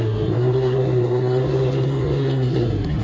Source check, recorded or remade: remade